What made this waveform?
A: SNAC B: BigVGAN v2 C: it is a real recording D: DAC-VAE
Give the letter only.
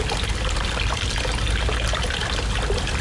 C